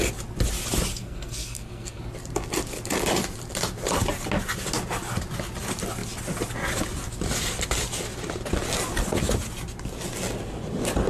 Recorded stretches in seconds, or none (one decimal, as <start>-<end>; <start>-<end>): 0.0-0.9; 2.0-11.1